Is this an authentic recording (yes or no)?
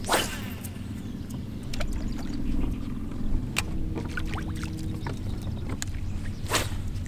yes